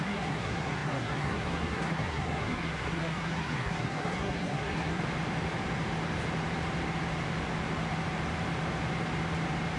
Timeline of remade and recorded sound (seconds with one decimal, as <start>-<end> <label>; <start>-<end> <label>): 0.0-5.0 remade; 5.0-9.8 recorded